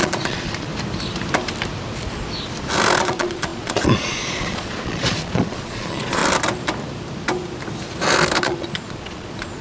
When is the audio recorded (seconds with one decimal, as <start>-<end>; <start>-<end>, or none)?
0.7-3.0; 6.2-8.4